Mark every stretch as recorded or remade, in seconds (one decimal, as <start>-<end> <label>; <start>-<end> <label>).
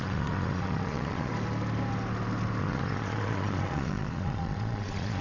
0.0-1.3 remade; 1.3-2.6 recorded; 2.6-5.2 remade